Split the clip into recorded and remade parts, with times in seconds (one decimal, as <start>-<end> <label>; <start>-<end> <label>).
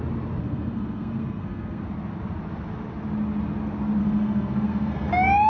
0.0-0.4 recorded; 0.4-1.8 remade; 1.8-4.0 recorded; 4.0-5.1 remade; 5.1-5.5 recorded